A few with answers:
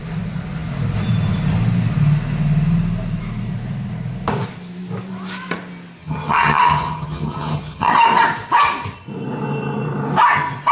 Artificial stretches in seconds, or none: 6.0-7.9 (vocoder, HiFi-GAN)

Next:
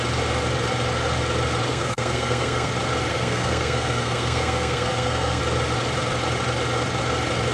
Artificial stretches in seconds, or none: 1.7-2.7 (codec, SNAC); 3.1-5.4

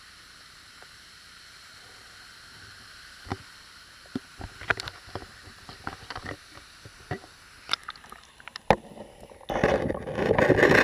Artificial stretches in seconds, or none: none